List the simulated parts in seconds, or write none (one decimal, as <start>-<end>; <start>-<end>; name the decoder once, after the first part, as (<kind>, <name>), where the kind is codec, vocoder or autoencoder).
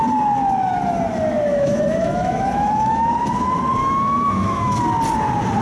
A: 1.5-3.1 (autoencoder, DAC-VAE); 3.8-4.8